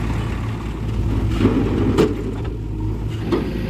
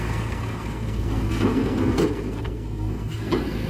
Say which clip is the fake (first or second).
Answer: second